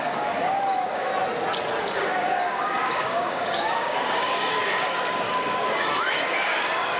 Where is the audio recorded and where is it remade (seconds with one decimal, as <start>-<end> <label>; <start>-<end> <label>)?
0.0-1.1 remade; 1.1-1.8 recorded; 1.8-7.0 remade